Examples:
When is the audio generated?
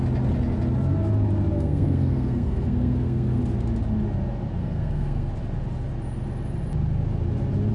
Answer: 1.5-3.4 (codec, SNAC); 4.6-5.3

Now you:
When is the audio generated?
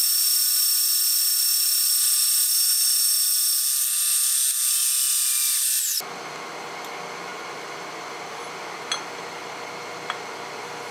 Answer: none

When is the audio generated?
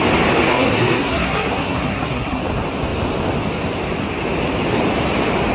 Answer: 0.5-2.4 (codec, SNAC)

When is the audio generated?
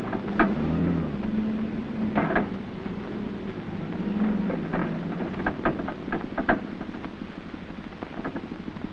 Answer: none